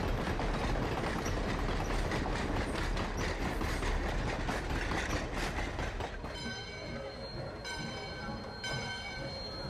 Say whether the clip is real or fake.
real